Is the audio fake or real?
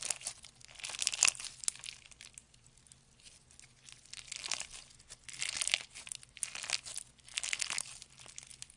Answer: real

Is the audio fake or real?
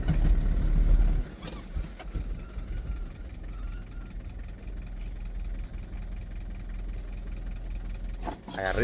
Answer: real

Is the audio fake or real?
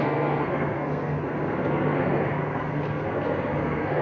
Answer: fake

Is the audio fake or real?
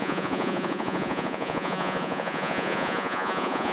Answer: fake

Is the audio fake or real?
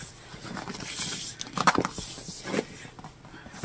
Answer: real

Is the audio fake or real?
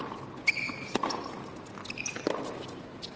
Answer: real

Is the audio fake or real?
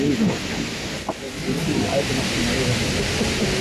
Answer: real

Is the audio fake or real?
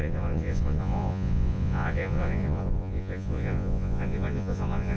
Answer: fake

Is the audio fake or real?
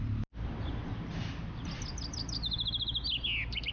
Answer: real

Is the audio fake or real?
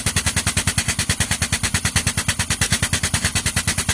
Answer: real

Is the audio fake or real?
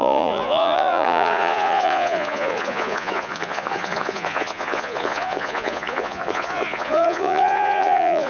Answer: fake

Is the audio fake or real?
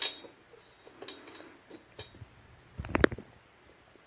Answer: real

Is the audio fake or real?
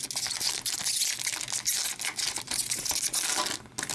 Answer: real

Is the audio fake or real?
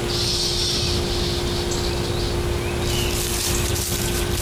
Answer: real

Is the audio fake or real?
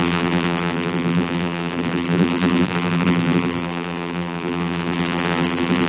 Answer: fake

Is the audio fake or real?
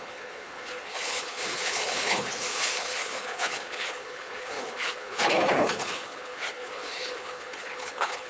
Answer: fake